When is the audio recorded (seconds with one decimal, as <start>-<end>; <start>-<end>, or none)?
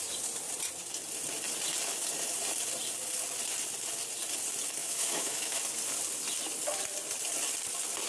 0.0-4.8; 5.6-8.1